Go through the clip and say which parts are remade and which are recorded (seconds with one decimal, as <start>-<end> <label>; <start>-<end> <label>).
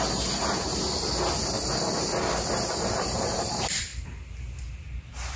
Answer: 0.0-0.8 remade; 0.8-2.6 recorded; 2.6-3.9 remade; 3.9-4.6 recorded; 4.6-5.4 remade